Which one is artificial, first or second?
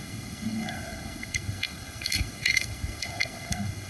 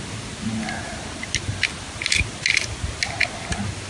first